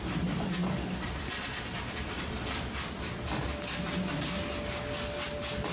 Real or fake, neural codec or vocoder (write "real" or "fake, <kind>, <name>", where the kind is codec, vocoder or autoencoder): real